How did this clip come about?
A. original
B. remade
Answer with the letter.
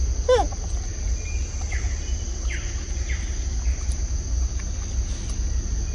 A